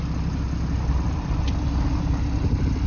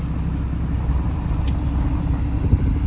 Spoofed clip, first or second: first